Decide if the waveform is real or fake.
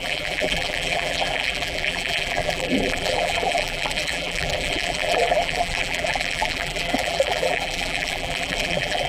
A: fake